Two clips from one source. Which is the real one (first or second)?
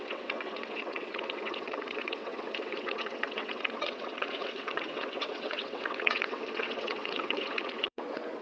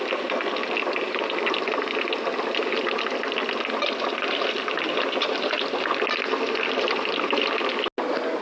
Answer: second